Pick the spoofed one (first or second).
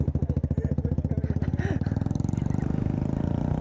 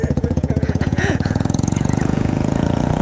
second